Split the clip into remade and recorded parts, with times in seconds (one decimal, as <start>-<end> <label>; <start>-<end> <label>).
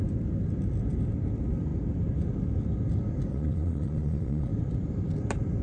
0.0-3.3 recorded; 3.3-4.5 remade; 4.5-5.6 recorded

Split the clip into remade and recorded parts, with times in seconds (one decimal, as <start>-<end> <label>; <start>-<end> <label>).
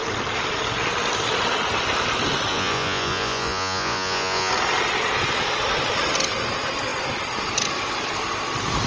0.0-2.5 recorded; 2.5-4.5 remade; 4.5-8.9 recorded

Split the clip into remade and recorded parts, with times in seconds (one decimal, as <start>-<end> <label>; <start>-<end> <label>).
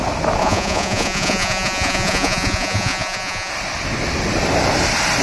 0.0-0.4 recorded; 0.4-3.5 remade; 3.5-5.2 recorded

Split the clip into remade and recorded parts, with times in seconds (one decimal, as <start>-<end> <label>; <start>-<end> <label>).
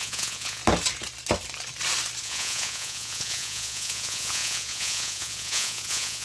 0.0-0.6 remade; 0.6-2.2 recorded; 2.2-6.2 remade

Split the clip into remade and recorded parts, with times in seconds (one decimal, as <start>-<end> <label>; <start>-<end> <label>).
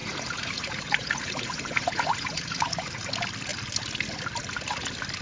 0.0-3.1 remade; 3.1-5.2 recorded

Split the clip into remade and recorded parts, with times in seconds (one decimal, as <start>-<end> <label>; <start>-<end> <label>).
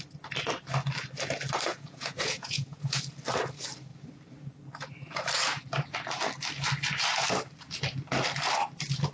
0.0-1.7 recorded; 1.7-3.0 remade; 3.0-9.1 recorded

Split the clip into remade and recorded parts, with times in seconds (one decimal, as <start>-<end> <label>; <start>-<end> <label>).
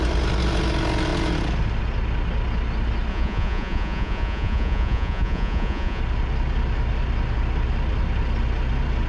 0.0-3.1 recorded; 3.1-6.0 remade; 6.0-9.1 recorded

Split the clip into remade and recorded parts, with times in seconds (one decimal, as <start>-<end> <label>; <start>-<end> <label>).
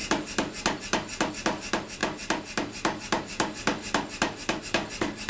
0.0-5.3 recorded